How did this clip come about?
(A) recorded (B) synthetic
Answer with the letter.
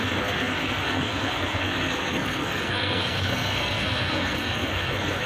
B